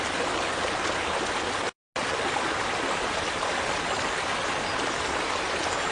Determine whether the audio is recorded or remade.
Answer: recorded